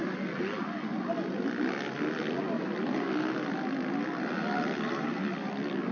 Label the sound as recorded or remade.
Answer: recorded